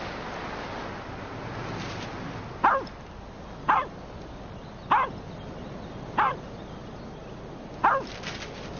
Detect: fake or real real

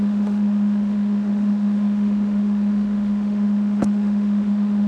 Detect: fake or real fake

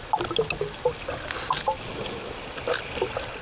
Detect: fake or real real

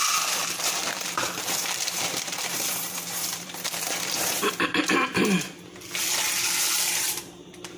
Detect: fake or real fake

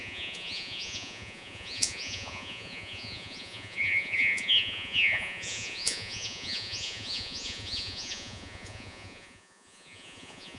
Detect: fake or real fake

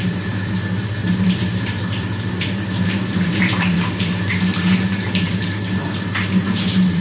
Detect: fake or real fake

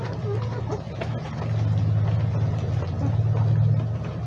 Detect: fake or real real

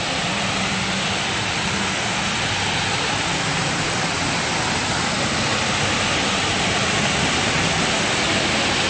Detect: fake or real real